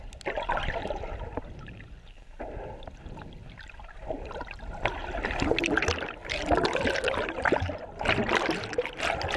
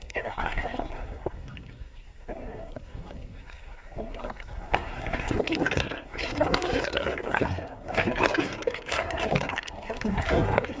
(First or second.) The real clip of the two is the first